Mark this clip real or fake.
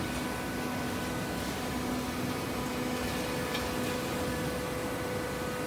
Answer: real